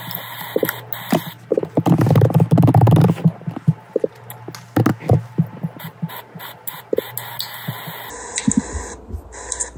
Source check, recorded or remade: recorded